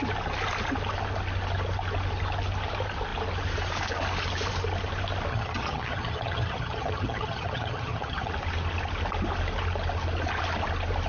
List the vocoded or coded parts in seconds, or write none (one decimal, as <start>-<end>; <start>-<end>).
5.3-8.3